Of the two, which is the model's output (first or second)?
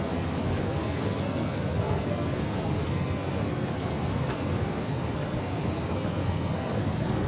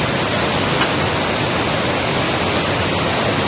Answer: first